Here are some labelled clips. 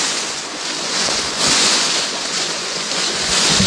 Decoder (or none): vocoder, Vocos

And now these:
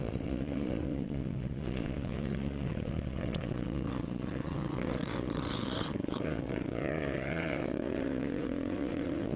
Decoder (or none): vocoder, WaveNeXt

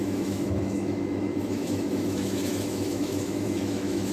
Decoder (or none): autoencoder, DAC-VAE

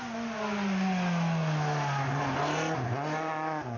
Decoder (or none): none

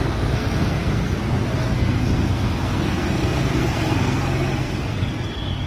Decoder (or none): codec, SNAC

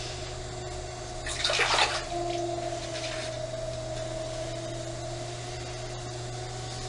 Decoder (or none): none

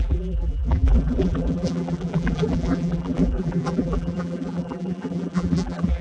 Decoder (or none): vocoder, BigVGAN v2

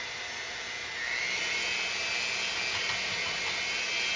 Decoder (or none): none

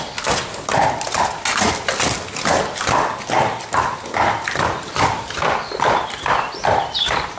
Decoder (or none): none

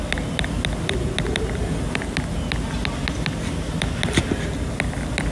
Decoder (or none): none